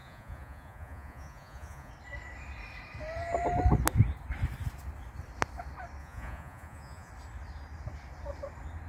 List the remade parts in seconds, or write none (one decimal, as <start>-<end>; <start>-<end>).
0.0-1.9; 6.0-7.1